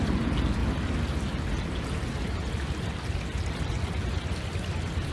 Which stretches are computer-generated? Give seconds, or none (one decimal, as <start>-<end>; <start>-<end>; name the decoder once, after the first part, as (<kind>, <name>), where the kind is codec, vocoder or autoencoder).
none